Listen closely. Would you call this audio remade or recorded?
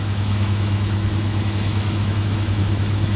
remade